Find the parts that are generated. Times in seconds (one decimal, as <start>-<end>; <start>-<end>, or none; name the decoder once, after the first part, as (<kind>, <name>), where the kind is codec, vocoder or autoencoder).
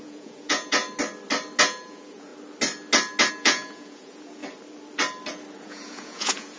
0.0-0.8 (vocoder, Vocos); 1.6-2.3; 3.3-4.4; 5.6-6.6